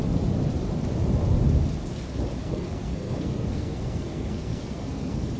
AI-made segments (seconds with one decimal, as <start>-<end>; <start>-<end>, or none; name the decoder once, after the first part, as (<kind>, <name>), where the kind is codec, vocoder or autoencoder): 2.4-5.4 (codec, SNAC)